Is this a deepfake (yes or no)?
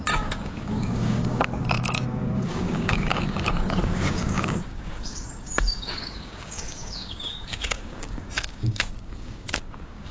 yes